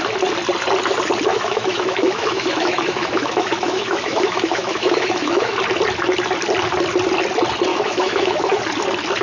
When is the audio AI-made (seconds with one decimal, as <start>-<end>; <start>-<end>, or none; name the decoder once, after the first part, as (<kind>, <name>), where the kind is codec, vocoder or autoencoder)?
1.3-5.6 (autoencoder, DAC-VAE); 7.7-8.6